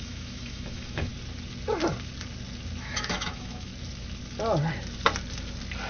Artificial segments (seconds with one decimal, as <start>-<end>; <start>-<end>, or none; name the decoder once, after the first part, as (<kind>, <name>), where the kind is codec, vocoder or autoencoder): 0.0-1.1 (autoencoder, DAC-VAE); 2.8-3.7